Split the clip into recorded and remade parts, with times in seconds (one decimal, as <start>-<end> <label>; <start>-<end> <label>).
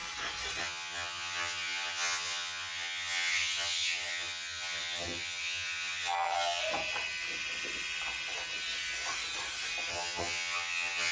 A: 0.0-0.6 recorded; 0.6-6.6 remade; 6.6-9.9 recorded; 9.9-11.1 remade